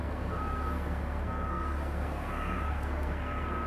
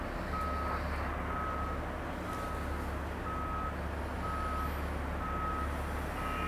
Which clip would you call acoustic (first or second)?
second